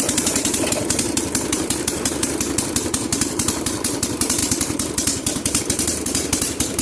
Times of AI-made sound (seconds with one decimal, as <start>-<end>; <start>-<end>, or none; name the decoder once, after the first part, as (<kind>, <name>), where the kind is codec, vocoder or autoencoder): 0.0-6.8 (vocoder, BigVGAN v2)